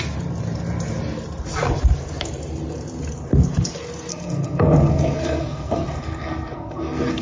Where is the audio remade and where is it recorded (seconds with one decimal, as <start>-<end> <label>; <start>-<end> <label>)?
0.0-4.1 recorded; 4.1-7.2 remade

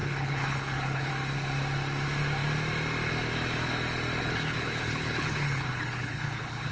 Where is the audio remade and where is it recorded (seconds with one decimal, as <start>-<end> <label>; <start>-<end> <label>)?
0.0-1.1 remade; 1.1-4.2 recorded; 4.2-6.7 remade

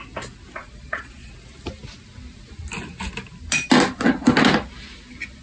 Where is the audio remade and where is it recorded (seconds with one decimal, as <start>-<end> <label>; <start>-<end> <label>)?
0.0-0.6 recorded; 0.6-1.3 remade; 1.3-5.4 recorded

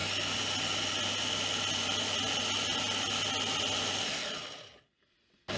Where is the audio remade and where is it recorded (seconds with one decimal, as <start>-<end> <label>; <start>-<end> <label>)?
0.0-5.6 recorded